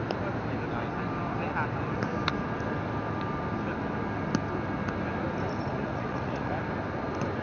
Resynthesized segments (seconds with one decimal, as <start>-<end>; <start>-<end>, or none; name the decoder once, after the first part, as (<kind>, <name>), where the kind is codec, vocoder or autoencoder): 5.7-6.5 (vocoder, Vocos)